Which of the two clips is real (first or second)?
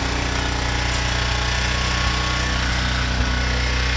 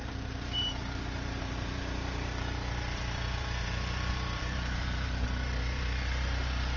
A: first